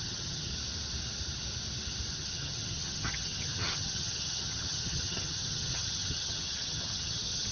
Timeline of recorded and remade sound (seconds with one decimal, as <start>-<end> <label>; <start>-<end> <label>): 0.0-0.5 remade; 0.5-2.1 recorded; 2.1-7.5 remade